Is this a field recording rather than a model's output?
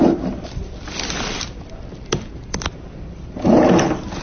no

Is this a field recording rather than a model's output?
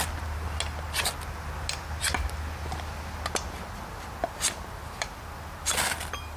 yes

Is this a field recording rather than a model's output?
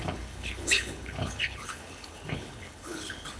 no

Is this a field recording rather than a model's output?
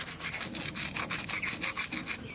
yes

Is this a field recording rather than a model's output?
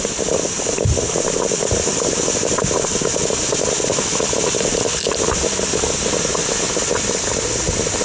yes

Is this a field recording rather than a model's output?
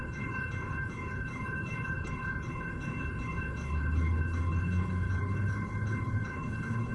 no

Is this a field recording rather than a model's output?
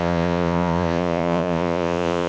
no